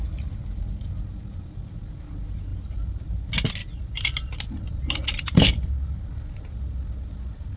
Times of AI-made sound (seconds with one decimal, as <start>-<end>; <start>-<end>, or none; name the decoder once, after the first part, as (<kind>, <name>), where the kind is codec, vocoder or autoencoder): 2.5-3.1 (vocoder, BigVGAN v2); 3.6-5.7